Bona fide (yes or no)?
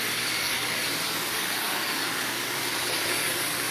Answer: no